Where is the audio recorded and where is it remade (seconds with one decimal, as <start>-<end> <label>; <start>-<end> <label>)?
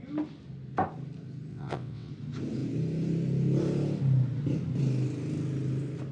0.0-1.5 recorded; 1.5-2.1 remade; 2.1-6.1 recorded